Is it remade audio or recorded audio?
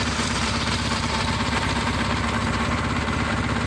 remade